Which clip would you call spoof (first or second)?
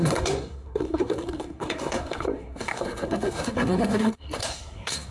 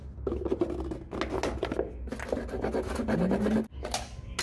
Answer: first